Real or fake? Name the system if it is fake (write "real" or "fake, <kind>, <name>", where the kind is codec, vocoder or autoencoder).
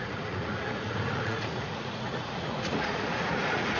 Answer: fake, vocoder, Vocos